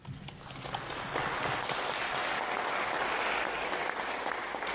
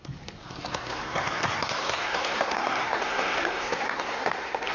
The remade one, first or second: second